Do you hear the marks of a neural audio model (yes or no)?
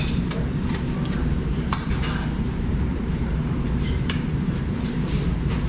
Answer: yes